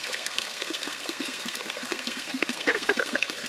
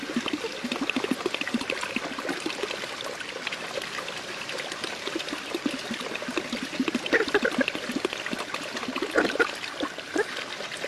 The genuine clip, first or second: second